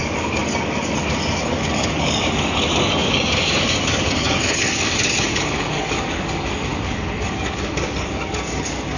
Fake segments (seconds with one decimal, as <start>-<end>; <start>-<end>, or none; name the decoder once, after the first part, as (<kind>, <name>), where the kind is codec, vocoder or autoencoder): 0.0-9.0 (codec, DAC)